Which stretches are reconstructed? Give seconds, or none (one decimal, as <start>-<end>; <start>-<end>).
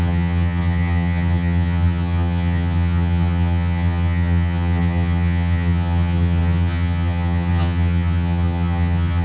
0.0-9.2